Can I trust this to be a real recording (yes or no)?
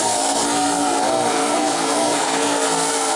no